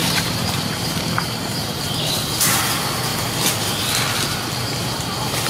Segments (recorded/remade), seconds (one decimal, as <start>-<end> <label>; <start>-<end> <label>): 0.0-1.8 remade; 1.8-5.5 recorded